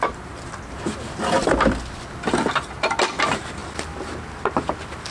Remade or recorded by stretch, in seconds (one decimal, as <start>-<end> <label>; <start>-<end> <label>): 0.0-5.1 recorded